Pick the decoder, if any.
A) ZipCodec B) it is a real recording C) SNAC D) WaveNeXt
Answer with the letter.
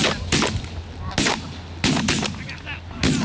B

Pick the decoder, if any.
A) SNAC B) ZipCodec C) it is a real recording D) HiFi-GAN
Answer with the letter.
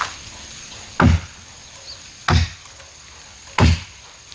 C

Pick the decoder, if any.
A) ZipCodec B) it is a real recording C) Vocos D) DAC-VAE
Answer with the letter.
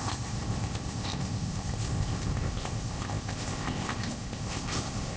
A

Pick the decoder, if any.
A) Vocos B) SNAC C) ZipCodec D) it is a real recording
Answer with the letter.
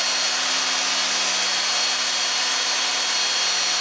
D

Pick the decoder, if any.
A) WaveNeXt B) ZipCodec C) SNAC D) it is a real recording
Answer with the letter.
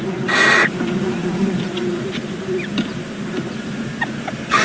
D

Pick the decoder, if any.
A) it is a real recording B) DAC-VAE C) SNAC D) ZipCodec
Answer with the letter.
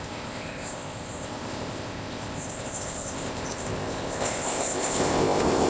D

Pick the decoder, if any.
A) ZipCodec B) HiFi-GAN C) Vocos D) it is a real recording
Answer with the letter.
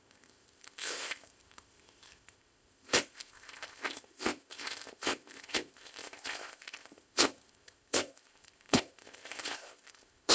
A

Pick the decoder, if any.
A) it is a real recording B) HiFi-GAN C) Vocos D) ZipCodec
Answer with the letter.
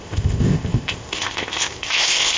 D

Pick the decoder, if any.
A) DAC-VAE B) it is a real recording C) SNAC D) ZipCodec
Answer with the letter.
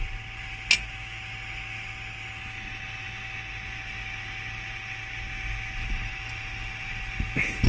B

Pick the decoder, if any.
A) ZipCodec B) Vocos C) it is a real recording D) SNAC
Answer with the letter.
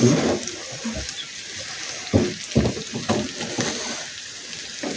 C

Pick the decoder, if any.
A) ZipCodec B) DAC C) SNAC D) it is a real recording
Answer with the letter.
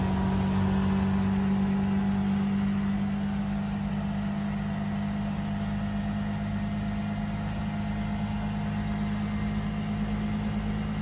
D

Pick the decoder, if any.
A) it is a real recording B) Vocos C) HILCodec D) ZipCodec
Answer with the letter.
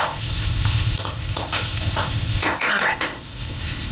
D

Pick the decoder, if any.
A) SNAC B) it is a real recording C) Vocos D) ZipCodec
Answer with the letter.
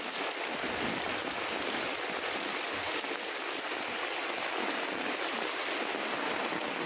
B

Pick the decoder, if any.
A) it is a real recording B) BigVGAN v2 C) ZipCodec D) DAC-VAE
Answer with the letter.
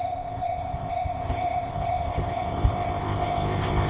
C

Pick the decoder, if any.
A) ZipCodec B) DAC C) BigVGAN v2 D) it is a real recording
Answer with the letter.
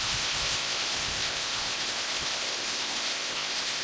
A